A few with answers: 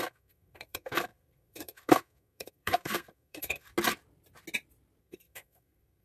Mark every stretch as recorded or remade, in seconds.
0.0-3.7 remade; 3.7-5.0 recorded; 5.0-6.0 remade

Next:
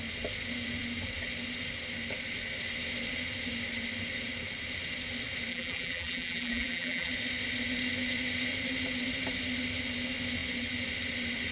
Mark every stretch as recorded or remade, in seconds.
0.0-5.5 recorded; 5.5-7.1 remade; 7.1-11.5 recorded

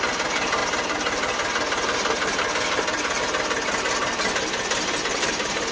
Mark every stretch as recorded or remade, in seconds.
0.0-5.7 recorded

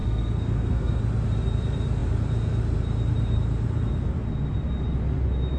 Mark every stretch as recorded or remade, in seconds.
0.0-1.0 remade; 1.0-5.6 recorded

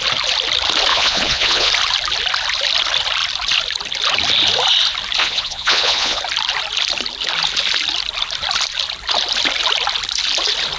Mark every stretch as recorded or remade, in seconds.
0.0-0.9 recorded; 0.9-1.7 remade; 1.7-5.2 recorded; 5.2-6.2 remade; 6.2-10.8 recorded

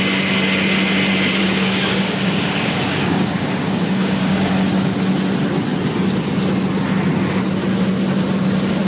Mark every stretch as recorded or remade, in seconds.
0.0-1.4 recorded; 1.4-4.5 remade; 4.5-8.9 recorded

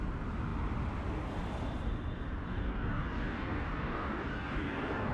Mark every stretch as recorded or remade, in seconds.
0.0-2.5 recorded; 2.5-5.1 remade

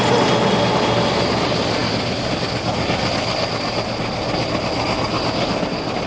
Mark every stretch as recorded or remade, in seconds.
0.0-6.1 recorded